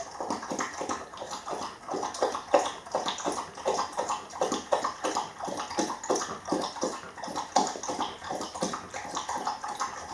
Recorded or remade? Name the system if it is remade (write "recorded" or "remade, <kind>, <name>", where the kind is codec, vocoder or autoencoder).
recorded